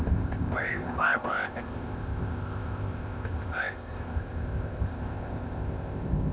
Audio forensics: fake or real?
fake